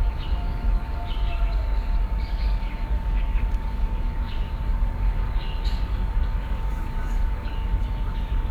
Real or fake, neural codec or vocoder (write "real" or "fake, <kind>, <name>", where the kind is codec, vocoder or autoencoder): fake, codec, DAC